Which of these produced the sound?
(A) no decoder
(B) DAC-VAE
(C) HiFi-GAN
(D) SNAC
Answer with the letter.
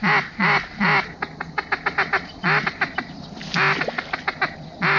A